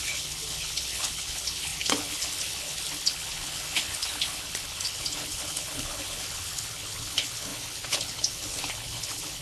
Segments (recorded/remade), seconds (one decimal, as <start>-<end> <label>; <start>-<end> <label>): 0.0-9.4 remade